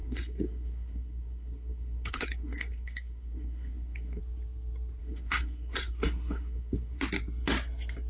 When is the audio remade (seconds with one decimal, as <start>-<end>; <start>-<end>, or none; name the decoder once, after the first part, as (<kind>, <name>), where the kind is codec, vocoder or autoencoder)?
0.0-4.2 (codec, SNAC); 5.0-7.0